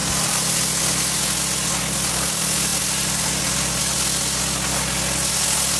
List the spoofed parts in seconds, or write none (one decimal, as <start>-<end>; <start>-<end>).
0.0-0.8